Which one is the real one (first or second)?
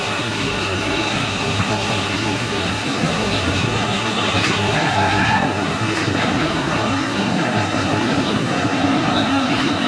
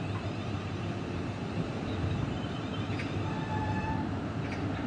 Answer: second